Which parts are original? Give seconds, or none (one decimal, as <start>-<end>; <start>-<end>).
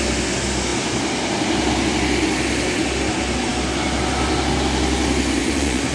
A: 0.0-5.4